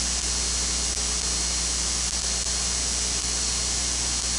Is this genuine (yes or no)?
yes